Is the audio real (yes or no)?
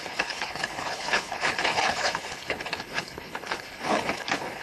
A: no